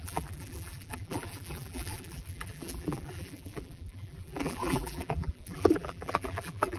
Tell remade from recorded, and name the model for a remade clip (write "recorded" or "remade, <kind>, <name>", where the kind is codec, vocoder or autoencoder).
remade, vocoder, BigVGAN v2